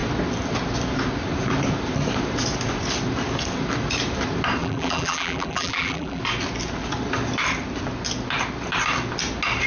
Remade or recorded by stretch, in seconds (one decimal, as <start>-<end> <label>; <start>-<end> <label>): 0.0-4.6 recorded; 4.6-6.2 remade; 6.2-9.7 recorded